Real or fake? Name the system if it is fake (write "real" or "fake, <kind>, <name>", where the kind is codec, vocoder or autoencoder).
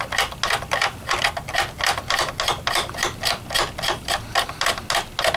real